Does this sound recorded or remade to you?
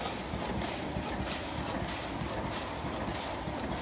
recorded